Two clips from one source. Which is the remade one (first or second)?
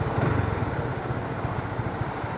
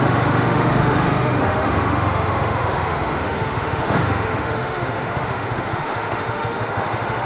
second